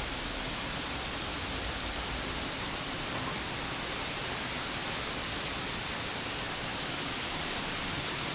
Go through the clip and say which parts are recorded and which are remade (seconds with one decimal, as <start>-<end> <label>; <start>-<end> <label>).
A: 0.0-6.7 recorded; 6.7-7.2 remade; 7.2-8.3 recorded